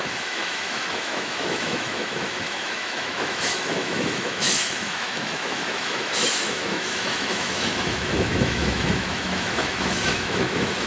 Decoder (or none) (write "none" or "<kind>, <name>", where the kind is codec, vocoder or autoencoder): autoencoder, DAC-VAE